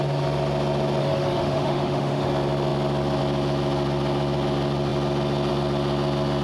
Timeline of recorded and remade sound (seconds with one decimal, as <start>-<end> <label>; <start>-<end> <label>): 0.0-1.0 recorded; 1.0-2.3 remade; 2.3-6.4 recorded